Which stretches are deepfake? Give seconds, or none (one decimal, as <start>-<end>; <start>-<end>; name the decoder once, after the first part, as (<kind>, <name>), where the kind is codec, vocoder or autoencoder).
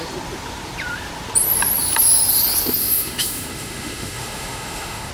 2.8-5.1 (autoencoder, DAC-VAE)